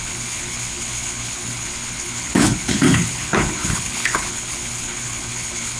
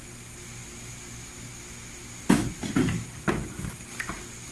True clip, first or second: second